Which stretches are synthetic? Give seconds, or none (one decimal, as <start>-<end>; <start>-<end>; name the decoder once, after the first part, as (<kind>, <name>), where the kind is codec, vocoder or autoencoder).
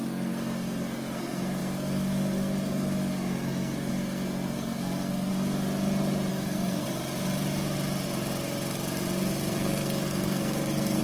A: 0.0-5.3 (codec, SNAC); 6.3-7.0; 9.5-11.0